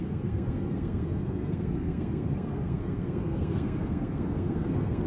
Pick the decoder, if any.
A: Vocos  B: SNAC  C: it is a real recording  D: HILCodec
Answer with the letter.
B